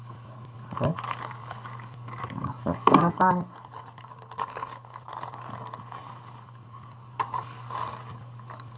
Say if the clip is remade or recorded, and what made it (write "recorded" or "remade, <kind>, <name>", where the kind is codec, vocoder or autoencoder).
remade, codec, DAC